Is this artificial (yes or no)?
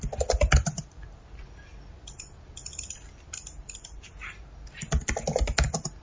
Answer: no